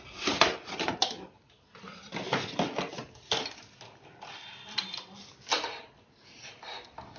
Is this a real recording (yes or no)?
yes